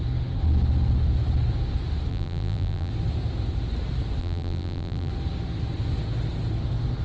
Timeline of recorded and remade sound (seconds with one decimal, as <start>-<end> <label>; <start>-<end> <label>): 0.0-2.1 recorded; 2.1-2.9 remade; 2.9-4.2 recorded; 4.2-5.1 remade; 5.1-7.0 recorded